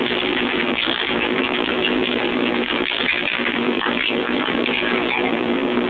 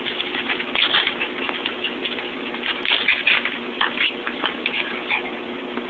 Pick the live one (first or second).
second